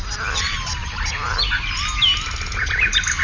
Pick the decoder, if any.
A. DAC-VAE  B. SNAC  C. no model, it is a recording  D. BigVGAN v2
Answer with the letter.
C